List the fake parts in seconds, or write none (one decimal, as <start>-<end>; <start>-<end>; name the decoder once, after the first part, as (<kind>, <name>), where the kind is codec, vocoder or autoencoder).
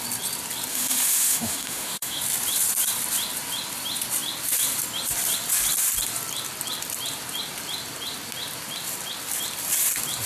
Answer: 0.7-2.2 (autoencoder, DAC-VAE)